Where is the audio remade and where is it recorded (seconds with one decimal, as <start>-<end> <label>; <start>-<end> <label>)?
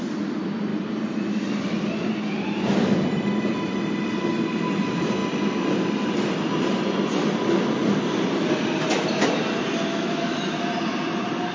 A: 0.0-9.9 recorded; 9.9-10.6 remade; 10.6-11.5 recorded